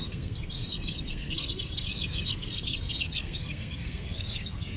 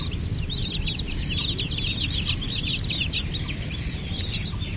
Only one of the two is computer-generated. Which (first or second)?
first